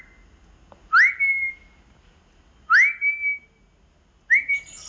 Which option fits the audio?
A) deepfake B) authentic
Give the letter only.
B